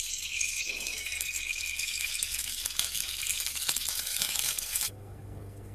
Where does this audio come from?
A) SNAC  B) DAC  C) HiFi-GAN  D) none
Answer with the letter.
A